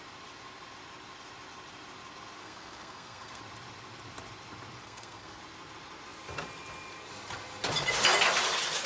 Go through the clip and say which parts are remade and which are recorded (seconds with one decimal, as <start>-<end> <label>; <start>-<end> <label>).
0.0-2.4 recorded; 2.4-3.4 remade; 3.4-4.8 recorded; 4.8-5.4 remade; 5.4-8.9 recorded